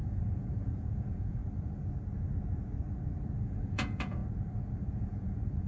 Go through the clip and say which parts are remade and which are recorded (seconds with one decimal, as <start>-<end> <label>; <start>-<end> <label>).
0.0-1.4 remade; 1.4-3.5 recorded; 3.5-4.2 remade; 4.2-4.9 recorded; 4.9-5.7 remade